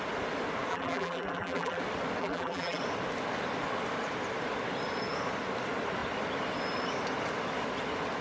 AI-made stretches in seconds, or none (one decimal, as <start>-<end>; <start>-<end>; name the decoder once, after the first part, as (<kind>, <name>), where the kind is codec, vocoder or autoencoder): 0.7-1.8 (vocoder, BigVGAN v2); 2.2-2.8